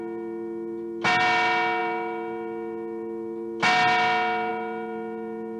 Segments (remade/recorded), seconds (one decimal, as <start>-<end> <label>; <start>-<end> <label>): 0.0-5.6 recorded